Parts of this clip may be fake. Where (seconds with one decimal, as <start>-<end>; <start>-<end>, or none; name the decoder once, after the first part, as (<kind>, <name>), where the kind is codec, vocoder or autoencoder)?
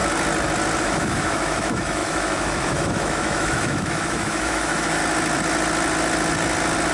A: 0.8-5.0 (autoencoder, DAC-VAE)